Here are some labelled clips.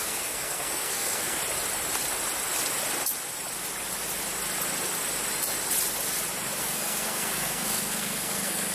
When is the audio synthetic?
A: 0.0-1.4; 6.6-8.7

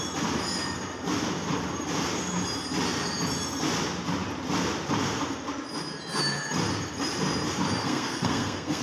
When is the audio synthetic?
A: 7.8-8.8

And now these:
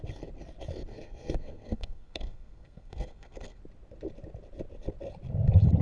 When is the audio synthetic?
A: 0.9-3.6

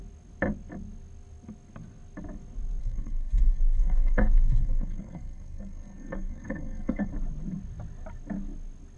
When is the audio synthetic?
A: 2.8-7.1